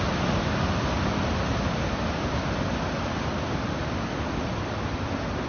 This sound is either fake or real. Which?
real